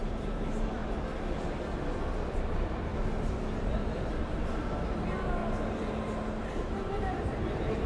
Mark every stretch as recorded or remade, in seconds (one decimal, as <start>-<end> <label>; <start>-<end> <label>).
0.0-0.8 remade; 0.8-2.3 recorded; 2.3-2.9 remade; 2.9-3.6 recorded; 3.6-5.4 remade; 5.4-6.4 recorded; 6.4-7.9 remade